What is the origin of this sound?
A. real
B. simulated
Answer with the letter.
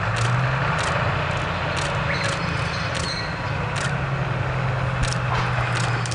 A